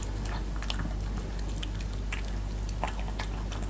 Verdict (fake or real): real